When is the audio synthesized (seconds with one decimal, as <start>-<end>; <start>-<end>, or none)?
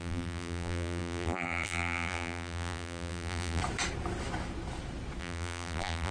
0.0-3.6; 5.2-6.1